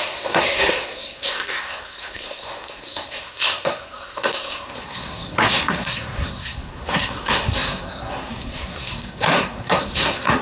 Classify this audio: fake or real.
fake